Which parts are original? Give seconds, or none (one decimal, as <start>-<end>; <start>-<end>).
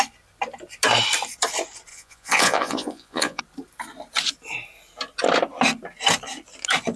0.0-1.9; 3.4-7.0